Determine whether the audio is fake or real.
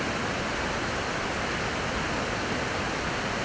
real